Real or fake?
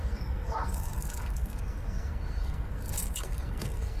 fake